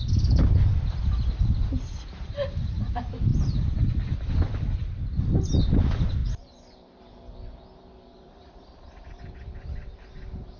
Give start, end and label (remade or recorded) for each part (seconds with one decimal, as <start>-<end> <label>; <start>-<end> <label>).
0.0-6.2 recorded; 6.2-7.0 remade; 7.0-8.1 recorded; 8.1-10.0 remade; 10.0-10.6 recorded